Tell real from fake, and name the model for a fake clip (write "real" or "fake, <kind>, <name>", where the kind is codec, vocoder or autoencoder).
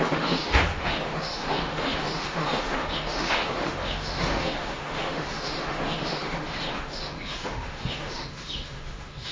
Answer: fake, autoencoder, DAC-VAE